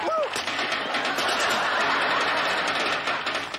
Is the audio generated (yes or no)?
no